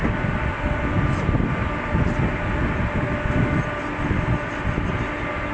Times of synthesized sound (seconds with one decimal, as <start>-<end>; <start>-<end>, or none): none